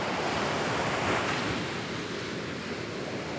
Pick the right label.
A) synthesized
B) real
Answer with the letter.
B